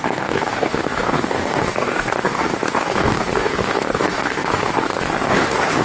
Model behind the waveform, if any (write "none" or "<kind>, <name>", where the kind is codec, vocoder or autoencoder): codec, DAC